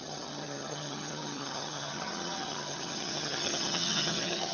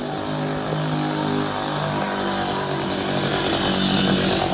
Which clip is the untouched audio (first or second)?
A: second